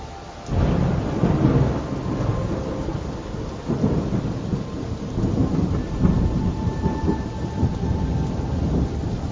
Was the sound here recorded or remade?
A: recorded